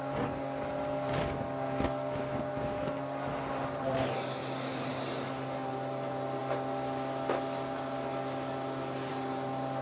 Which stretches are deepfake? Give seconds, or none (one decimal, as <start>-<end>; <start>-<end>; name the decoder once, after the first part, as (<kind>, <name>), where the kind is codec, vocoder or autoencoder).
none

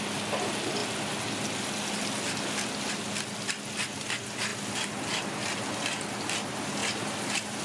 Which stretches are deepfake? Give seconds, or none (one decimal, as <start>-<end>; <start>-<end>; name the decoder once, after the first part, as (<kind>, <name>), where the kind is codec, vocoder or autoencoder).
none

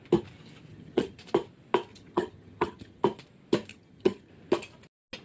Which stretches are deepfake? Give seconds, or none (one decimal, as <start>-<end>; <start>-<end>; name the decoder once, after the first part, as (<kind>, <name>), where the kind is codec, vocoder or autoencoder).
0.7-1.2 (vocoder, HiFi-GAN); 1.9-3.0; 3.7-4.3

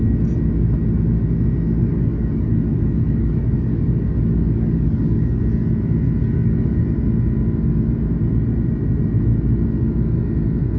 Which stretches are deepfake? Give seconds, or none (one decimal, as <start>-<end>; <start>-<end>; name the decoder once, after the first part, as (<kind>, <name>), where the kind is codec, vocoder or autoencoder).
1.8-5.4 (codec, DAC); 6.2-6.8

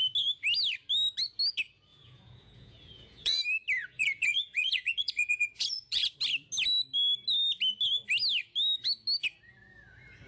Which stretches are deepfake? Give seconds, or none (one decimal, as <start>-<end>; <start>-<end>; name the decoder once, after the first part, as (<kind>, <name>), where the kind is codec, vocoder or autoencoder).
1.9-3.4 (vocoder, Vocos); 3.8-6.1

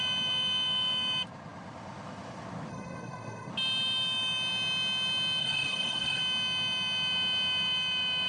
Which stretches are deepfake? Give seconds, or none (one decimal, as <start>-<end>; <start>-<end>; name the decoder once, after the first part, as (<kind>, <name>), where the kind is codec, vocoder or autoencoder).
2.7-3.5 (codec, SNAC); 5.4-6.2

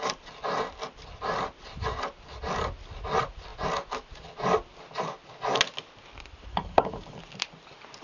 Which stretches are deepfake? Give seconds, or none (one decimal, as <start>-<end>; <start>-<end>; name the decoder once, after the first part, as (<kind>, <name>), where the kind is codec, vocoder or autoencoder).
6.5-7.2 (codec, DAC)